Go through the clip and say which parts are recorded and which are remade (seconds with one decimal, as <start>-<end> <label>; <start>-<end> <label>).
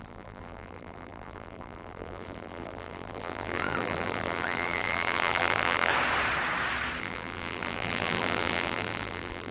0.0-5.9 remade; 5.9-7.0 recorded; 7.0-9.5 remade